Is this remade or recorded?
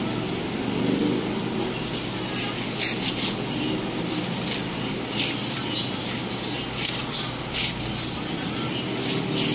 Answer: recorded